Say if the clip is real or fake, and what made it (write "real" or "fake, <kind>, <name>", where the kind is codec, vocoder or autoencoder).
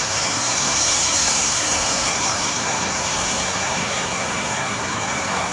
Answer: fake, codec, SNAC